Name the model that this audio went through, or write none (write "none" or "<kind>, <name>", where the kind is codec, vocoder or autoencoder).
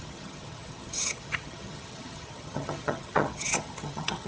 vocoder, HiFi-GAN